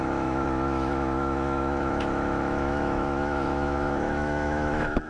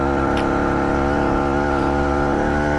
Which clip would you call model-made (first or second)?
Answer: first